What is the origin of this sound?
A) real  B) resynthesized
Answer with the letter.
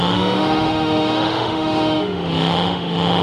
B